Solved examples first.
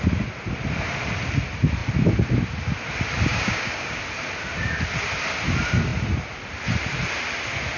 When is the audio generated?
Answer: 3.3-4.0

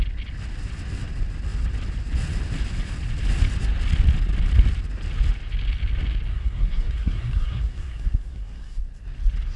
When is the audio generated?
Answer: 6.3-8.8

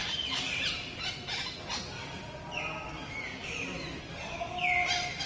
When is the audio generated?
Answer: none

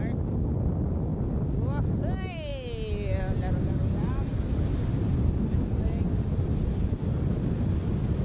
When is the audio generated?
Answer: none

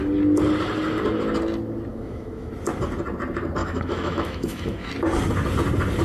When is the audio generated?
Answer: 1.9-2.5; 3.6-4.9